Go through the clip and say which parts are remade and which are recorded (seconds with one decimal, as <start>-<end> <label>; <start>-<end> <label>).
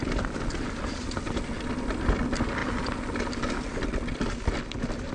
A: 0.0-5.1 recorded